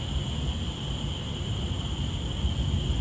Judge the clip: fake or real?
real